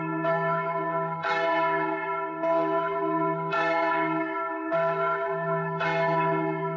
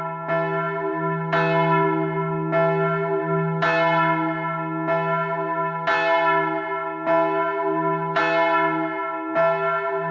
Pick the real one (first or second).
second